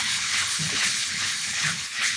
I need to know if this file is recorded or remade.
remade